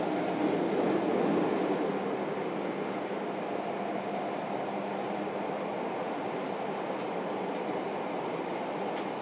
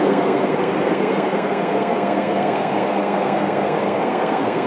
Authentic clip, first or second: first